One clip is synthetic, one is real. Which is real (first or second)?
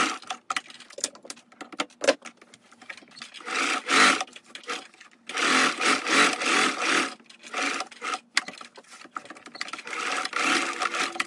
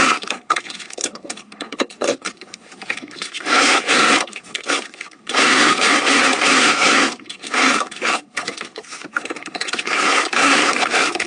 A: first